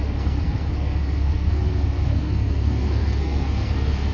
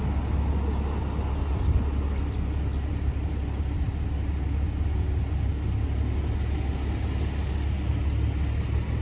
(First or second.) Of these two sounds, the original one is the second